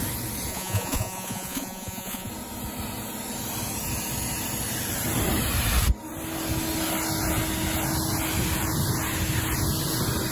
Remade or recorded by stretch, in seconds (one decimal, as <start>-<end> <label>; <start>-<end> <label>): 0.0-0.5 recorded; 0.5-2.3 remade; 2.3-10.3 recorded